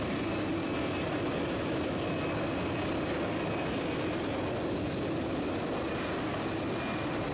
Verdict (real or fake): real